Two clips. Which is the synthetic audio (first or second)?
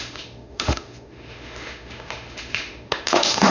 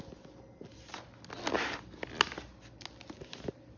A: first